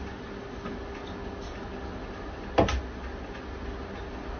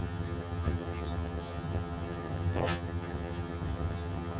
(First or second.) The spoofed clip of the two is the second